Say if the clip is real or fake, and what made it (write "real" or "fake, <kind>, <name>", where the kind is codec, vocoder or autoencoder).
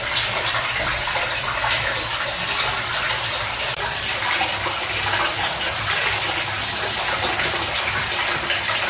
real